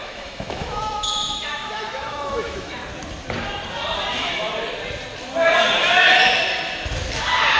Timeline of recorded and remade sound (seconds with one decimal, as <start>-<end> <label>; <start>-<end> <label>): 0.0-2.8 remade; 2.8-4.1 recorded; 4.1-4.5 remade; 4.5-5.8 recorded; 5.8-6.4 remade; 6.4-7.6 recorded